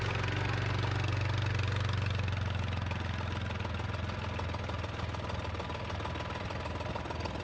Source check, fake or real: real